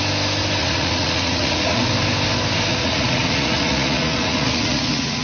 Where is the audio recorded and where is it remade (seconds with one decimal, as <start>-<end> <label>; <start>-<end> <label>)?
0.0-0.6 recorded; 0.6-1.8 remade; 1.8-2.7 recorded; 2.7-5.2 remade